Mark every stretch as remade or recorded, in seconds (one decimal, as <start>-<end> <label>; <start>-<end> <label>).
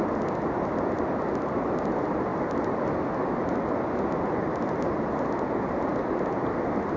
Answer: 0.0-7.0 recorded